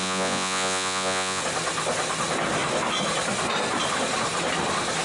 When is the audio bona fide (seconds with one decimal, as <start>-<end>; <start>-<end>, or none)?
1.4-5.0